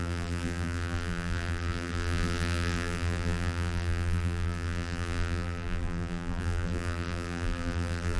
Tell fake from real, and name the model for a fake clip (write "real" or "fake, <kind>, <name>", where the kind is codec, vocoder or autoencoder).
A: fake, vocoder, BigVGAN v2